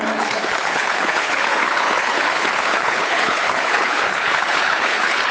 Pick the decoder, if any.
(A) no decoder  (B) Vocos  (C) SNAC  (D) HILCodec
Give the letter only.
D